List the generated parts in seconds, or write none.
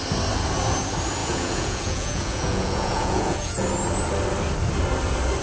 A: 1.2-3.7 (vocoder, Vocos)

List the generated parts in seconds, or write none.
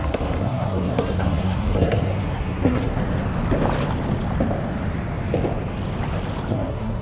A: 0.0-3.0 (codec, SNAC); 6.5-7.0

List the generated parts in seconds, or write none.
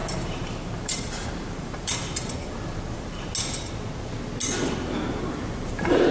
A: 0.0-3.3 (vocoder, BigVGAN v2); 5.3-6.1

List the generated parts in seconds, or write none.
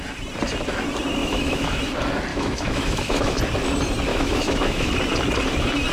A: 1.2-1.8 (autoencoder, DAC-VAE); 2.3-3.4; 4.1-4.9